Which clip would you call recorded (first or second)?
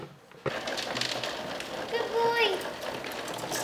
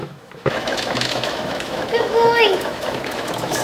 first